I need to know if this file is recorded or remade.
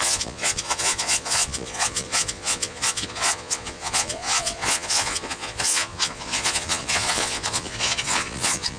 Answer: remade